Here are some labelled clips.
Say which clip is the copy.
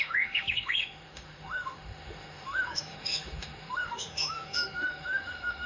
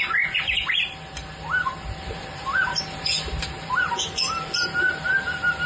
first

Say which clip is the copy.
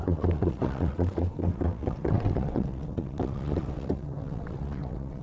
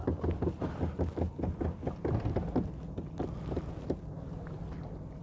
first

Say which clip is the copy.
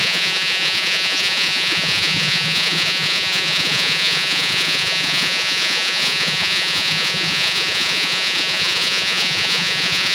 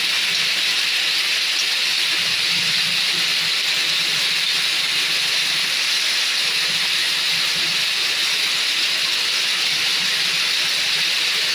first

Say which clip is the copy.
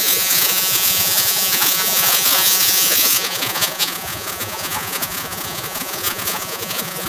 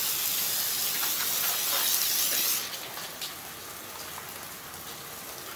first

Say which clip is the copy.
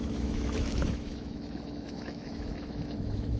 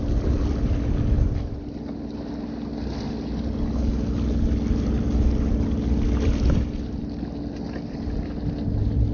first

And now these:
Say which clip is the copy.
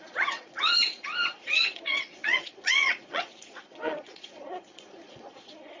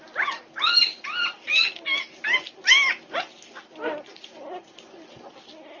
first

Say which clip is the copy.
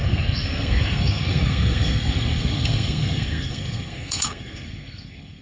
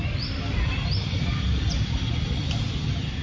first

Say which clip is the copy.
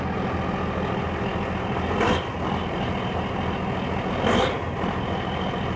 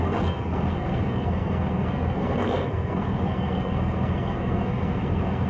second